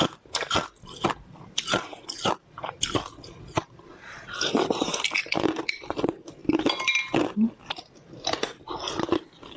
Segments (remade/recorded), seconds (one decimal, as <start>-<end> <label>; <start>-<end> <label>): 0.0-9.6 recorded